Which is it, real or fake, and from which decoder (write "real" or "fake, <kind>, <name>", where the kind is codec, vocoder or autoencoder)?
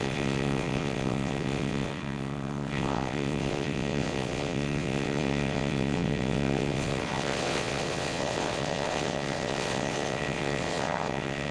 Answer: fake, vocoder, WaveNeXt